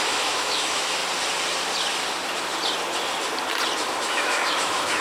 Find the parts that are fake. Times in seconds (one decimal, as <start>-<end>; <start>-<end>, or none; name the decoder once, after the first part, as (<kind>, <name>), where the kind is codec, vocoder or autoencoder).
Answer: 0.0-1.0 (autoencoder, DAC-VAE); 4.0-5.0

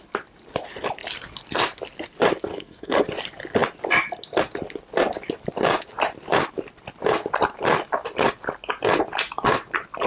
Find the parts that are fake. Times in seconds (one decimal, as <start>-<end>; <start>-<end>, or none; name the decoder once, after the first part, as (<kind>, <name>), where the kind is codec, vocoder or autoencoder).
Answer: 2.5-3.0 (codec, SNAC)

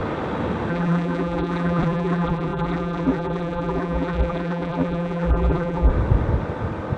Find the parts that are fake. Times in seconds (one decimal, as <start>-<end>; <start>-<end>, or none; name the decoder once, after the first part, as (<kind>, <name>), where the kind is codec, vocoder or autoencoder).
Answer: 0.7-5.9 (vocoder, BigVGAN v2)

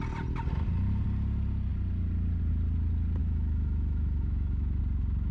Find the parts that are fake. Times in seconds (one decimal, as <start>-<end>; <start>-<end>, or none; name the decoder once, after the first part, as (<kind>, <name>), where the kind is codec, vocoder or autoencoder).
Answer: 3.2-4.8 (autoencoder, DAC-VAE)

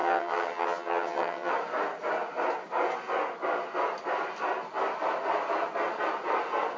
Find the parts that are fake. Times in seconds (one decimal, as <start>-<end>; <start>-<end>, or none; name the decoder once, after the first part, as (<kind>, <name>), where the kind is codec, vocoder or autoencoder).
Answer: 0.0-1.5 (vocoder, HiFi-GAN)